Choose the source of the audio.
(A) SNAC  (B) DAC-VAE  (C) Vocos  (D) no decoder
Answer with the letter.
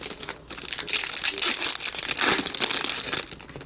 D